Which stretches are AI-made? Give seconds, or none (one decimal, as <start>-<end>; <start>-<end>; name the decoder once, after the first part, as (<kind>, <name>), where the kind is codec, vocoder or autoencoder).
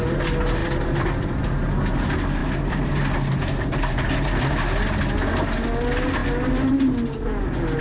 none